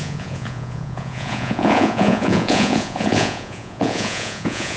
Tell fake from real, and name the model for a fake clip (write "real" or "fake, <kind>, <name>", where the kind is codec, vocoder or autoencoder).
fake, vocoder, Vocos